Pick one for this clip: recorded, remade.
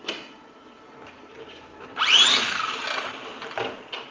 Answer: recorded